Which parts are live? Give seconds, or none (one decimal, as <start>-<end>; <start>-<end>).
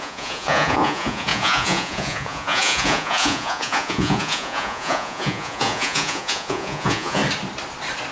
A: 7.2-8.1